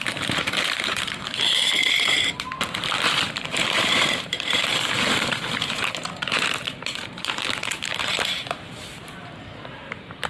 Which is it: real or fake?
fake